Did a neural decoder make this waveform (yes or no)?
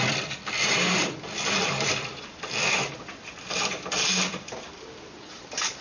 yes